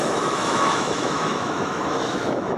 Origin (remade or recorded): remade